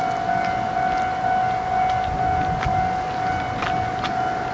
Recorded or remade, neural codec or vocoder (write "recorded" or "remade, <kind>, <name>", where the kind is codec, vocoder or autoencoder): recorded